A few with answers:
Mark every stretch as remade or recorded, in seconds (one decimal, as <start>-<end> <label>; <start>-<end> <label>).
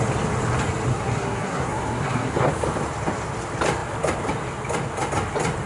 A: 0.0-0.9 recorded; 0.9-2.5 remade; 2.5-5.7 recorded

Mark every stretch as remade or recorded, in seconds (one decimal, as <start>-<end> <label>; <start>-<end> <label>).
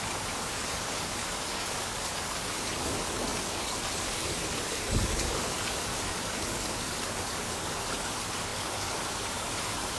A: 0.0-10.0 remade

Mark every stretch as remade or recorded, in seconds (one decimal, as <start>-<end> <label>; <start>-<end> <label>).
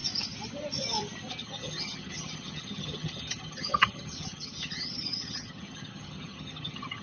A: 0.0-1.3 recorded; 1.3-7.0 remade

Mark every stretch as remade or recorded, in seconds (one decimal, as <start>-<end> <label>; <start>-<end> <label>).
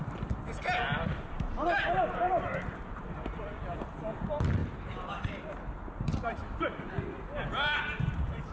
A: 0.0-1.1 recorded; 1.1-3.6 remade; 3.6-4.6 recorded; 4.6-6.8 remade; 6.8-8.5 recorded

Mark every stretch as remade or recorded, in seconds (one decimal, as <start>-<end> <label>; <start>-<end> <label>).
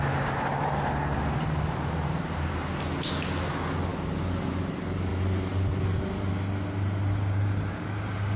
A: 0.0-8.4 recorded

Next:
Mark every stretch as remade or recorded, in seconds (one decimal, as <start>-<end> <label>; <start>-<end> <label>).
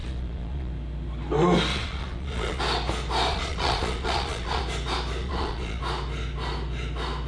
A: 0.0-0.7 remade; 0.7-1.7 recorded; 1.7-2.6 remade; 2.6-3.3 recorded; 3.3-4.6 remade; 4.6-5.2 recorded; 5.2-5.8 remade; 5.8-7.3 recorded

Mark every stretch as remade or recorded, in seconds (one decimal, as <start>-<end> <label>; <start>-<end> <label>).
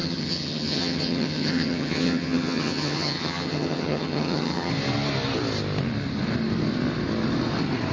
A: 0.0-4.7 remade; 4.7-7.9 recorded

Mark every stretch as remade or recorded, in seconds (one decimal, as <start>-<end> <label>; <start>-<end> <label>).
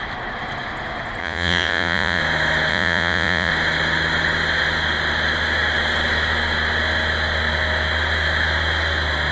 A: 0.0-1.2 recorded; 1.2-2.2 remade; 2.2-2.7 recorded; 2.7-3.5 remade; 3.5-9.3 recorded